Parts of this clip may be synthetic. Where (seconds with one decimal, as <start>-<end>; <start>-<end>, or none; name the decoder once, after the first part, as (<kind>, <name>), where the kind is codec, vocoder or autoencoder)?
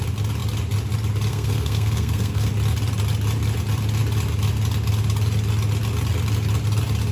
1.3-2.5 (codec, SNAC)